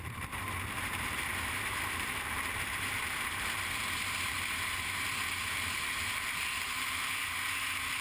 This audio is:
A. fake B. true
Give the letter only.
A